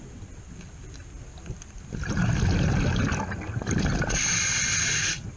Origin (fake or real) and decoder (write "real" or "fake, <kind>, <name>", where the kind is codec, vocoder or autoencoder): real